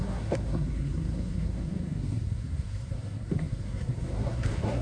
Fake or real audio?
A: fake